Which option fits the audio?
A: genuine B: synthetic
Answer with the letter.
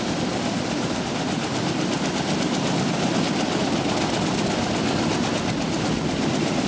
A